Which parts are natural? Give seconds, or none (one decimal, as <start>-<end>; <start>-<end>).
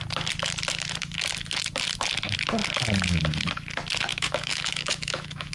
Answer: 0.0-4.1